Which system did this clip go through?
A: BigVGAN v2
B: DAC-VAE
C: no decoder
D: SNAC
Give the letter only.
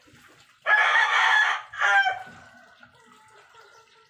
C